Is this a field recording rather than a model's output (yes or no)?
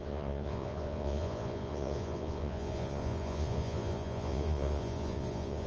no